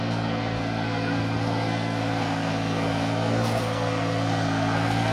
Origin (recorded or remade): remade